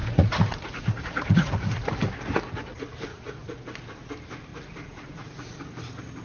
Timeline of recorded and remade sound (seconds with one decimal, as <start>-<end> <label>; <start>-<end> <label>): 0.0-1.9 remade; 1.9-3.1 recorded; 3.1-3.6 remade; 3.6-4.5 recorded; 4.5-5.7 remade; 5.7-6.2 recorded